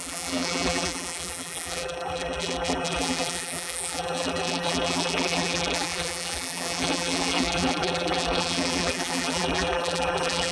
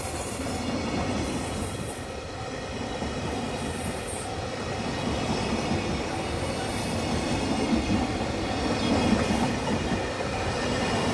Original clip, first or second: second